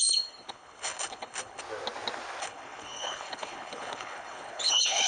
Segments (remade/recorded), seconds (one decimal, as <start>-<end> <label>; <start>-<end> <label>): 0.0-1.6 remade; 1.6-2.4 recorded; 2.4-5.1 remade